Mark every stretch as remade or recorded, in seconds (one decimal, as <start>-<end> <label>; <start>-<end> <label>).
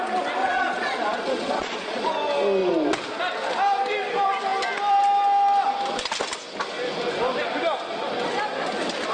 0.0-0.4 recorded; 0.4-2.1 remade; 2.1-9.1 recorded